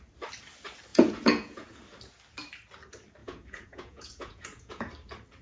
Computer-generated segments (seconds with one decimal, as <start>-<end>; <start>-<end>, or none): 0.9-1.8; 3.2-4.9